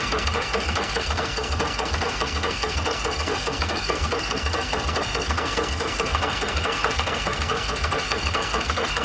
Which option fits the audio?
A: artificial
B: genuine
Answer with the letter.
A